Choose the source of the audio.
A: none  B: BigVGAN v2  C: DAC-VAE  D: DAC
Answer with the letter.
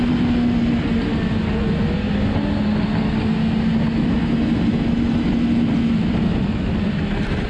A